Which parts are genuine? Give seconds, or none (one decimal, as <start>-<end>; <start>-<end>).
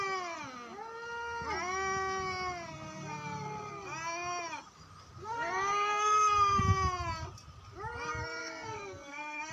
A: 0.0-5.2; 6.6-8.4